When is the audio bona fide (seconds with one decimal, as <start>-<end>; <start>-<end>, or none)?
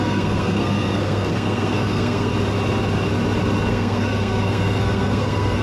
2.3-3.7